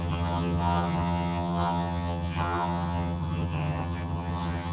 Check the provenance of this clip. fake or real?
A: fake